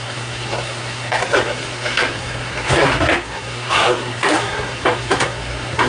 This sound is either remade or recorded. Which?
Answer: remade